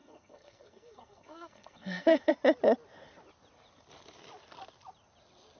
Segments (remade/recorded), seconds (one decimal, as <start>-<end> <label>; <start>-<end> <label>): 0.0-2.3 remade; 2.3-5.6 recorded